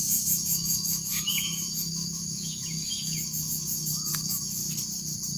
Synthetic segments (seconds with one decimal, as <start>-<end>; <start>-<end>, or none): 0.0-4.6